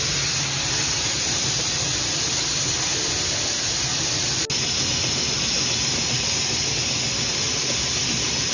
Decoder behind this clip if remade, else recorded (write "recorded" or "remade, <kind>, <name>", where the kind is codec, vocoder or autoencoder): recorded